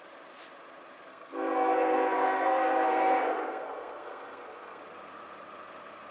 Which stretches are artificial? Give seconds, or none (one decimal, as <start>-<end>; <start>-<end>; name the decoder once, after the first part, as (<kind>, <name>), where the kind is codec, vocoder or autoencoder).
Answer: 1.1-4.8 (codec, SNAC)